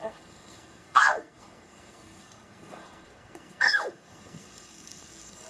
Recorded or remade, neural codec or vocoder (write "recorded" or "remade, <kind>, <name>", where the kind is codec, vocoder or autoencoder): remade, codec, SNAC